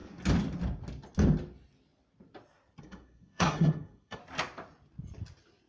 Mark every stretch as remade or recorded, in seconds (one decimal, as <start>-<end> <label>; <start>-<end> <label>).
0.0-2.8 recorded; 2.8-4.2 remade; 4.2-5.7 recorded